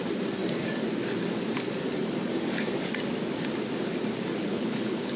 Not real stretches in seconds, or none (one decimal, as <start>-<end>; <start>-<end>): 4.4-5.2

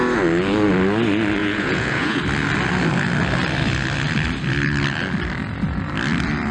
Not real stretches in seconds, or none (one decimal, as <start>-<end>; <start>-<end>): 1.4-2.2

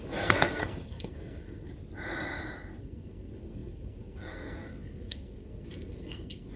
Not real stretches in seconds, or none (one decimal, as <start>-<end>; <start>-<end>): 0.0-1.7; 2.8-6.6